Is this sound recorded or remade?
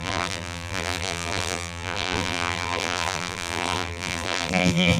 remade